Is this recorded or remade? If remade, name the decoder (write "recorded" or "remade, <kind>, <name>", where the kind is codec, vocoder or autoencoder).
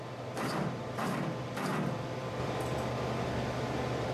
remade, vocoder, BigVGAN v2